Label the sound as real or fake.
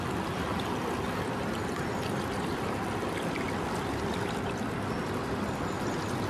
real